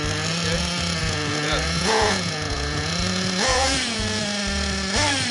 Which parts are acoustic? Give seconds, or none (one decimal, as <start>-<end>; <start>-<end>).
0.0-1.0; 2.9-3.5; 4.2-5.3